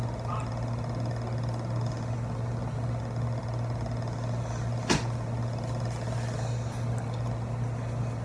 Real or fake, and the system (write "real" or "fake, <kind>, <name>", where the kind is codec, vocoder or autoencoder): real